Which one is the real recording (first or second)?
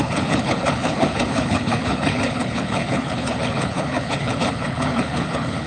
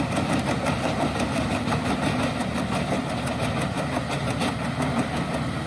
second